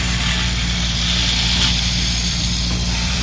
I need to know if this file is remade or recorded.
remade